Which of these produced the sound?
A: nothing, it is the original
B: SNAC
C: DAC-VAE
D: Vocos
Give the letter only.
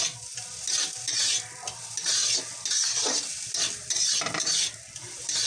A